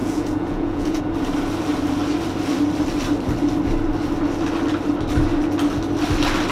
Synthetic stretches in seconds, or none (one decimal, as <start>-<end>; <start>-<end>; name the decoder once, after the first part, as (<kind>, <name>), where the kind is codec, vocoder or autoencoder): 0.0-1.0 (vocoder, Vocos)